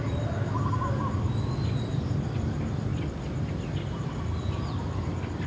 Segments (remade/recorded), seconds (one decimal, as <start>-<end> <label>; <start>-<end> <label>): 0.0-5.5 recorded